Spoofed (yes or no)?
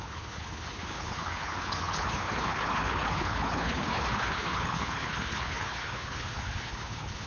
yes